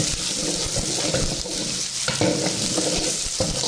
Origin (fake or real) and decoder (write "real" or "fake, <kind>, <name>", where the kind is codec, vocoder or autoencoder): real